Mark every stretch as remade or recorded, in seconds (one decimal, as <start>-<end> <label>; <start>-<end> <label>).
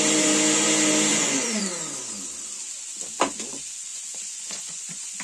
0.0-1.1 recorded; 1.1-1.6 remade; 1.6-3.9 recorded; 3.9-5.2 remade